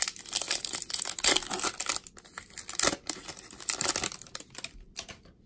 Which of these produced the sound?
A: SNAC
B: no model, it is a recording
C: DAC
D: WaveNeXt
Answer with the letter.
B